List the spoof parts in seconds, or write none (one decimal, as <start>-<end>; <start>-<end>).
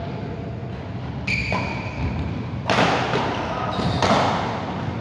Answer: 1.4-4.4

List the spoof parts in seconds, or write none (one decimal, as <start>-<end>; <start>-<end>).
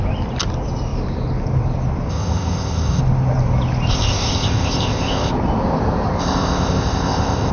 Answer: 2.1-3.0; 3.9-5.3; 6.2-7.5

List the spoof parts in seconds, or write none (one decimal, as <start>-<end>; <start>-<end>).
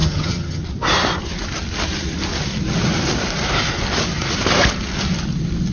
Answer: 0.0-0.6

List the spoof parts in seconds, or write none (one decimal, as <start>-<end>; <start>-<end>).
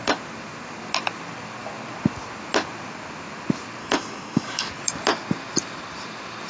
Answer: 3.8-4.7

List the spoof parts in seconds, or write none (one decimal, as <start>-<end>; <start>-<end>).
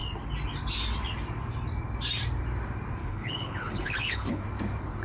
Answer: 3.0-4.4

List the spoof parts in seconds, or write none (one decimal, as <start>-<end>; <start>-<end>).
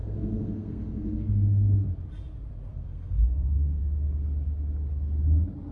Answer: 0.0-1.9; 2.7-3.8